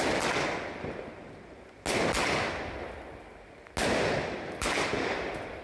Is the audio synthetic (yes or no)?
no